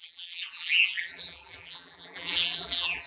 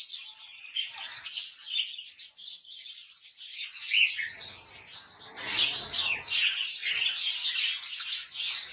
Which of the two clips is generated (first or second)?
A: first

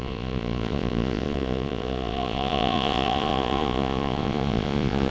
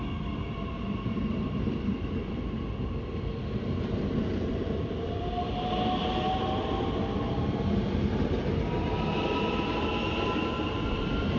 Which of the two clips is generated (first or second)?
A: first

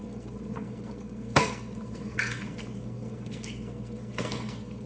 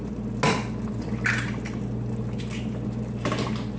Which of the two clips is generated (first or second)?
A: first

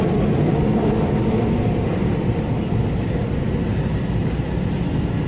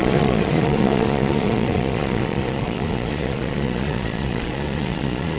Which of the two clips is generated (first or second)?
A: second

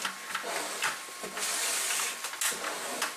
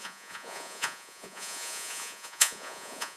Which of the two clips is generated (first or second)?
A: second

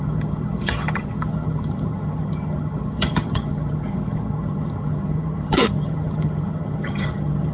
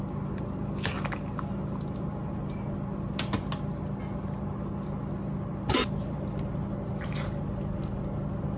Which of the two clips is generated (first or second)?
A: first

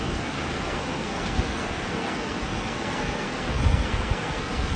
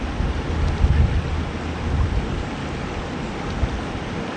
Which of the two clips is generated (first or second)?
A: first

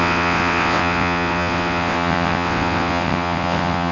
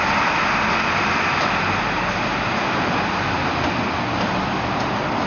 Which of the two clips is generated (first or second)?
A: first